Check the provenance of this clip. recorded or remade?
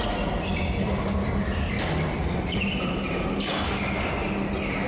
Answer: recorded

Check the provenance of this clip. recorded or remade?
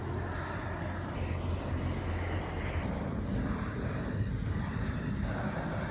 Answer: recorded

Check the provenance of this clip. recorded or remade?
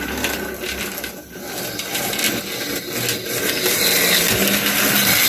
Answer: recorded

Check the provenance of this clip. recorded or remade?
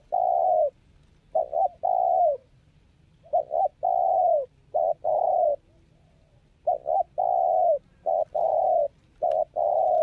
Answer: recorded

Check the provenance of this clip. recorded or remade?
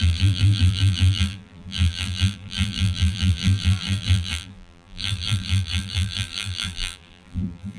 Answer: remade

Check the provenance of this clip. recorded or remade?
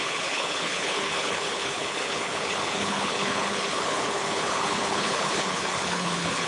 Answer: remade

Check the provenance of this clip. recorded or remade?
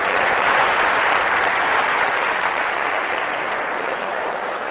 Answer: remade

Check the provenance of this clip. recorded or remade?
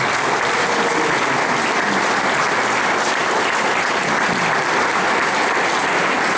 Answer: recorded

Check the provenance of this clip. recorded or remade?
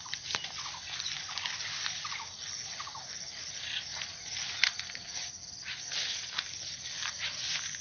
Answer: recorded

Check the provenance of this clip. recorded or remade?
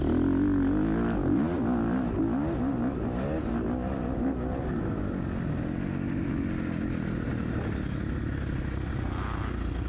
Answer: recorded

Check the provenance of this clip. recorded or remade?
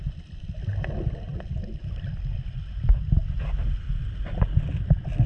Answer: recorded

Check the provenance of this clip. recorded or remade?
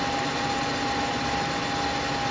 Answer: recorded